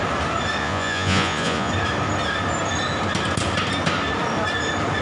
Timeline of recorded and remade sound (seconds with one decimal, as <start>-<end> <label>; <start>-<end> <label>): 0.0-0.6 recorded; 0.6-1.7 remade; 1.7-5.0 recorded